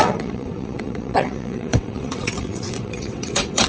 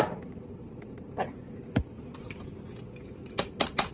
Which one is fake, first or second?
first